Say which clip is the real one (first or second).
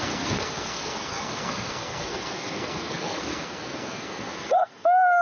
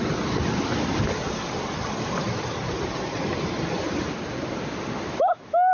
second